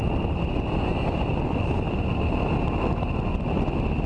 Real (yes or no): yes